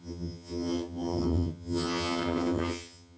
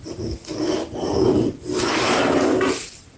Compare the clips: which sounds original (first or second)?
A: second